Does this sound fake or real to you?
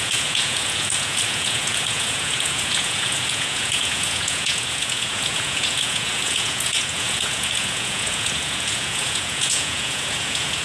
fake